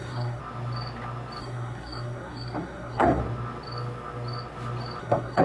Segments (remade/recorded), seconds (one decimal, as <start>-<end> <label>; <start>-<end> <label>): 0.0-0.4 remade; 0.4-1.4 recorded; 1.4-3.2 remade; 3.2-5.0 recorded; 5.0-5.4 remade